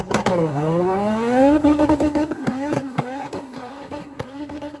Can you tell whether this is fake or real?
fake